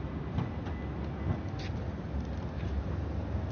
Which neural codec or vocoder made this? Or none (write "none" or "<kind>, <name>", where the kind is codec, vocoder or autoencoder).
none